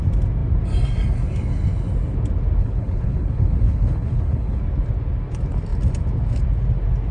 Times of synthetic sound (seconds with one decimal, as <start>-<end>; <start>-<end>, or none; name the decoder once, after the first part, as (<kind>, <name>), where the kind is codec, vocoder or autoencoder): 2.6-4.6 (codec, HILCodec)